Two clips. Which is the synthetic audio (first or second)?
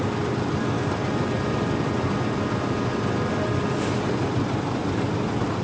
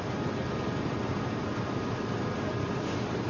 second